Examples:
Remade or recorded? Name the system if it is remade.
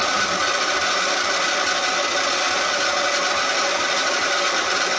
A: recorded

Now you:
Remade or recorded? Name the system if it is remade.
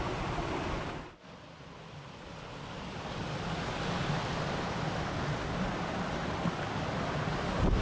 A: recorded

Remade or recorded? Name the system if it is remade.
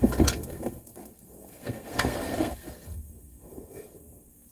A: remade, codec, SNAC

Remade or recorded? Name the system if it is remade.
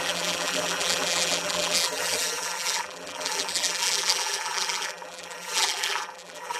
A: remade, vocoder, BigVGAN v2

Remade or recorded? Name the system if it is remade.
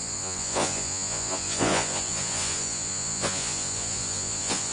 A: remade, vocoder, Vocos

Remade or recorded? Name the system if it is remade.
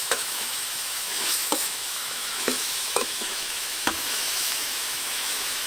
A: remade, autoencoder, DAC-VAE